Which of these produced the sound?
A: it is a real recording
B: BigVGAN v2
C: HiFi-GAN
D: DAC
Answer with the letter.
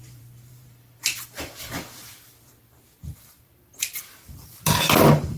B